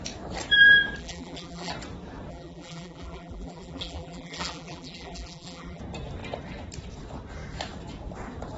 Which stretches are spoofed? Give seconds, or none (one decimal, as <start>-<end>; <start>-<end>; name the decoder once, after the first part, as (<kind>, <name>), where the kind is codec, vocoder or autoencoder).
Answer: 1.0-1.7 (vocoder, BigVGAN v2); 2.3-5.8